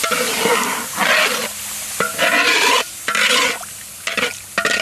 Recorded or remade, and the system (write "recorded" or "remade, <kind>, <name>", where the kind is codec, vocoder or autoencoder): recorded